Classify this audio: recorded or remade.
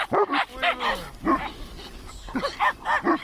recorded